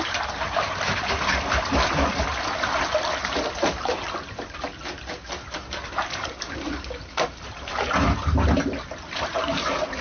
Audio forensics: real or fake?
real